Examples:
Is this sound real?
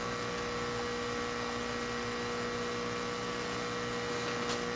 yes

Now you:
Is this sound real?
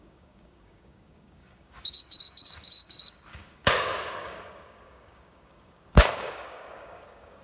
no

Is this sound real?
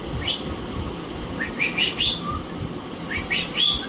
yes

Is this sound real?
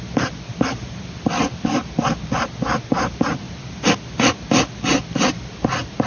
yes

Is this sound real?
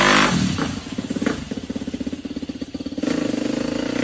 yes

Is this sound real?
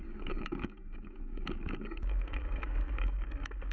no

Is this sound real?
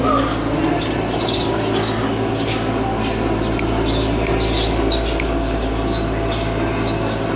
yes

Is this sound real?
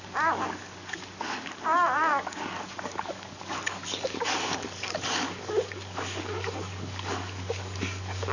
no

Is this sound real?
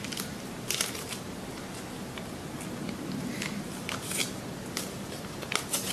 yes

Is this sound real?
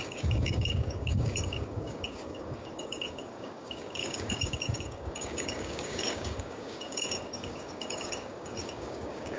no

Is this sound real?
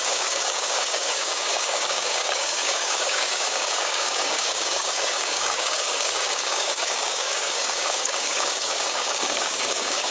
no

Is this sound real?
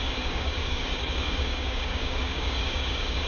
no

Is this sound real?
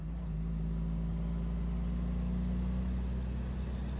yes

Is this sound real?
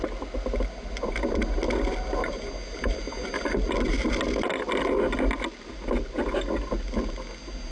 yes